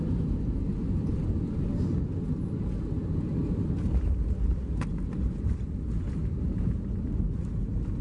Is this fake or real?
real